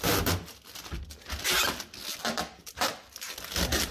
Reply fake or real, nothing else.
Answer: real